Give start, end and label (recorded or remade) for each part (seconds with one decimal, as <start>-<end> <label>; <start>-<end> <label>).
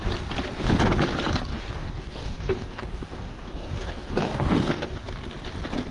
0.0-1.5 recorded; 1.5-5.0 remade; 5.0-5.9 recorded